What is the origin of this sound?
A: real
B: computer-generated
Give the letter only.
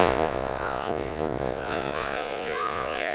B